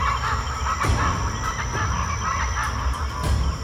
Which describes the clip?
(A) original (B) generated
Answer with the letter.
A